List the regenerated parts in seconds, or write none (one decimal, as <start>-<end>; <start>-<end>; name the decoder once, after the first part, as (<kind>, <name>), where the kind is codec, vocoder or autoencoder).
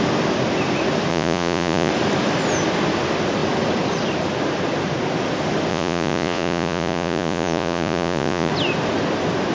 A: 1.1-1.9 (vocoder, Vocos); 5.7-8.5